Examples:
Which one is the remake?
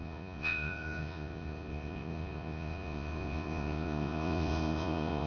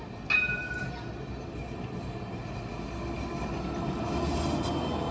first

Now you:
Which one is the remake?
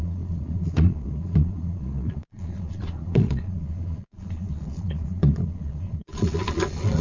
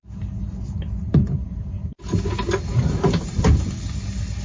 first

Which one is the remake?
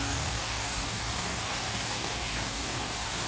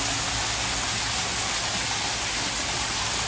first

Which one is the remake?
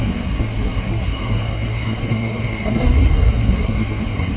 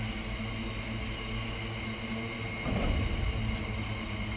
first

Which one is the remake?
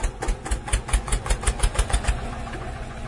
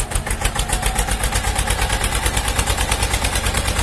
first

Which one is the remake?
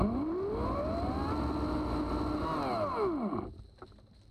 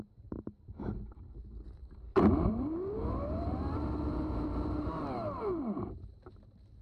second